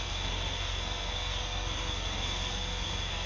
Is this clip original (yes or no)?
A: no